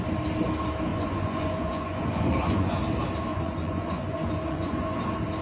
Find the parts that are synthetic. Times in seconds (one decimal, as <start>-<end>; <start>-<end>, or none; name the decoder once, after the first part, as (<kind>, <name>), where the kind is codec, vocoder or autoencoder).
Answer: 0.9-2.8 (vocoder, Vocos); 3.3-5.0